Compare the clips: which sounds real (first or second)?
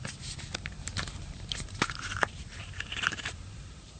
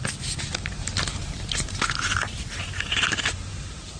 second